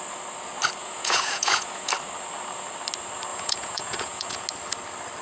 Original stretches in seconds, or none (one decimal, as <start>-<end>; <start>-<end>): 0.0-0.8; 1.9-3.3; 4.4-5.2